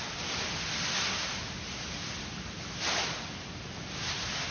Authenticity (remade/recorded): recorded